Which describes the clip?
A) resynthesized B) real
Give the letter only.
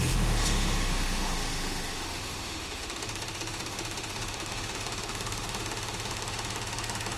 A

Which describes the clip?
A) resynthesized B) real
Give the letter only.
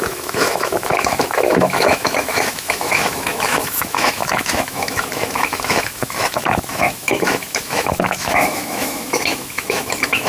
A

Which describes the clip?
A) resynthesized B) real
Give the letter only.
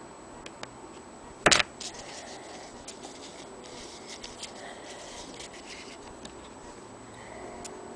B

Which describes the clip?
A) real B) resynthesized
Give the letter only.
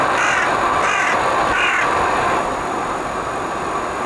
A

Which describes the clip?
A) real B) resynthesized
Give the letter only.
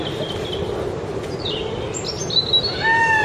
A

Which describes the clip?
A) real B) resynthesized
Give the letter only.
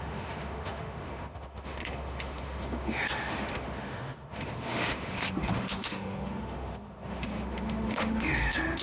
B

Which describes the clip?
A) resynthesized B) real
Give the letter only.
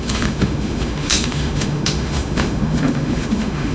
A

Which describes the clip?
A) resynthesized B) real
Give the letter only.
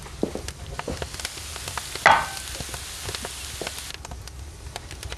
B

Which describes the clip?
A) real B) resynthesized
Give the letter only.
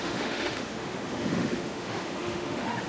B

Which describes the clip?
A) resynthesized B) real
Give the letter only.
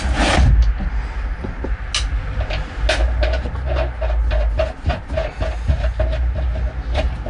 B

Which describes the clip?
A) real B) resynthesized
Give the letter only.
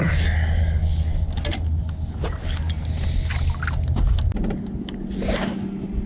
A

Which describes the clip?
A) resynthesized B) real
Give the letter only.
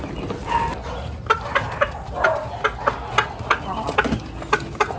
B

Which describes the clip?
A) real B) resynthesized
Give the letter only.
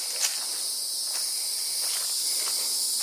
A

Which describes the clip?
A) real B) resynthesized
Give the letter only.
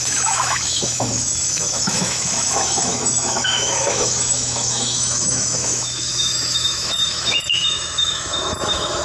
B